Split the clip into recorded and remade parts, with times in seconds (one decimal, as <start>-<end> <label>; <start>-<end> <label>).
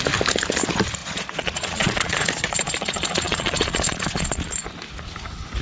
0.0-1.0 recorded; 1.0-4.4 remade; 4.4-5.6 recorded